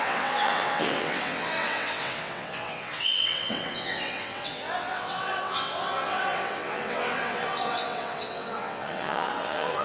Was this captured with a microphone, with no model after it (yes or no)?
no